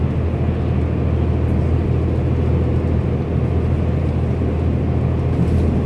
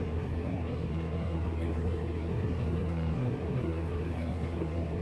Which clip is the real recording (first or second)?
first